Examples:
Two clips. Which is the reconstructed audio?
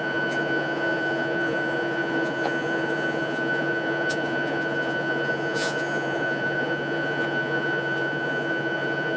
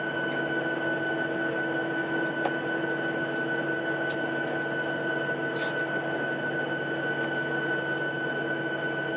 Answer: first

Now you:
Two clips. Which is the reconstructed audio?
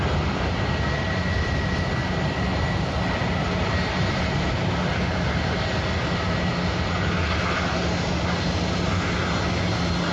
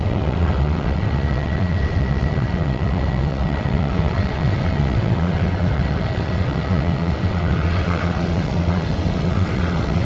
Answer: second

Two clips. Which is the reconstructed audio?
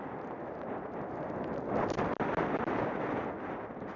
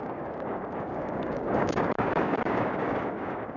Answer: second